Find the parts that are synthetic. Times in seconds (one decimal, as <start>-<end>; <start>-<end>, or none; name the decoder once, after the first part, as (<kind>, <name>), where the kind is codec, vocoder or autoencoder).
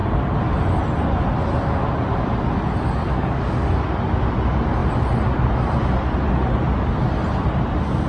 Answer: 3.1-3.7 (codec, DAC)